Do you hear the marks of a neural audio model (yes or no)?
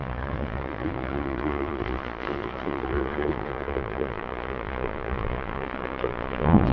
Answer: yes